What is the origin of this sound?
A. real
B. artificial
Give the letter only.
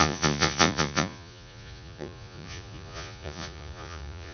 B